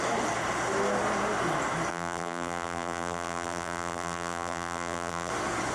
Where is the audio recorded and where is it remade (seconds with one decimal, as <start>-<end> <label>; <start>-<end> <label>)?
0.0-1.9 recorded; 1.9-5.3 remade; 5.3-5.7 recorded